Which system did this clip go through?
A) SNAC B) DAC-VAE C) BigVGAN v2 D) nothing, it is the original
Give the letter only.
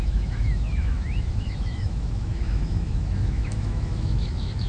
B